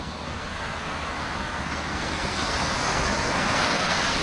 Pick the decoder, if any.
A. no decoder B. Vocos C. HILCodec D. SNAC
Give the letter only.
D